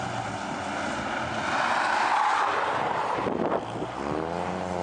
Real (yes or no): yes